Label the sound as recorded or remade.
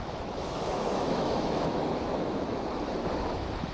remade